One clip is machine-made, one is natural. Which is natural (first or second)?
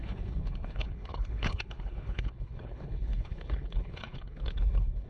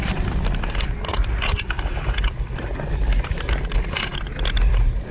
second